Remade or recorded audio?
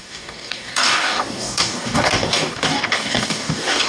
remade